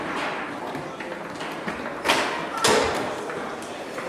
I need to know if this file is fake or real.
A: real